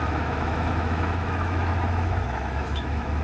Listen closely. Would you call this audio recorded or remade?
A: remade